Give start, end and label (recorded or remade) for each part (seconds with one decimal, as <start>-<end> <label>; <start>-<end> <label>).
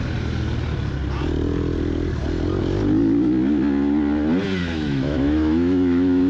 0.0-4.6 recorded; 4.6-6.3 remade